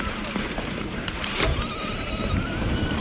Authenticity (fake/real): fake